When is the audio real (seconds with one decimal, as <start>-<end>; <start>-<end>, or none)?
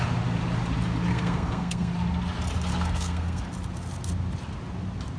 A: 0.0-1.1; 1.9-2.7; 3.4-5.2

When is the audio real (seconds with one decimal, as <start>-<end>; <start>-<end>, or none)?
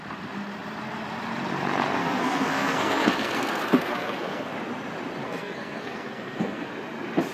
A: 0.0-2.0; 4.5-5.2; 6.7-7.3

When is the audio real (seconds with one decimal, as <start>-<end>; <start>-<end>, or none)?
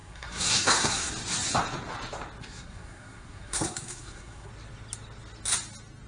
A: 1.1-2.4; 4.5-6.1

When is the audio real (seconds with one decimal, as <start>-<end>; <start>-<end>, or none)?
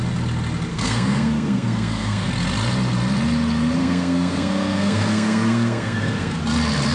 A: 0.0-0.7; 2.3-3.8; 6.4-6.9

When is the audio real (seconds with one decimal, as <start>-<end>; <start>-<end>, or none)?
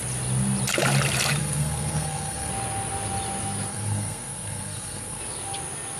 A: 0.0-1.4; 2.5-3.7; 5.2-6.0